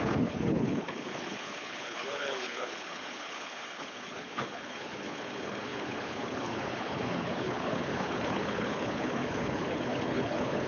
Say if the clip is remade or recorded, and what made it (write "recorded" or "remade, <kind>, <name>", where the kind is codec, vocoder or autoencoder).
remade, codec, HILCodec